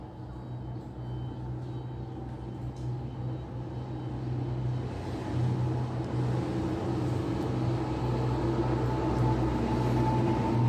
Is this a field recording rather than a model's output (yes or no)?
yes